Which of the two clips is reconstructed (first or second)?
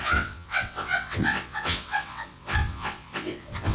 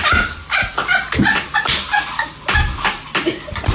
first